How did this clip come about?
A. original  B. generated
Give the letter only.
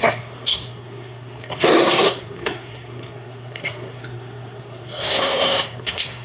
B